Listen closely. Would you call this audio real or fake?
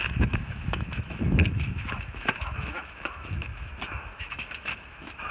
fake